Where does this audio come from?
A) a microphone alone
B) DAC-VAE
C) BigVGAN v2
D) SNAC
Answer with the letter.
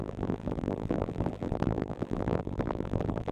C